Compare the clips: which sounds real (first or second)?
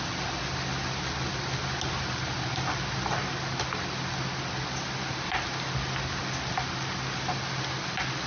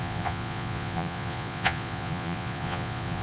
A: first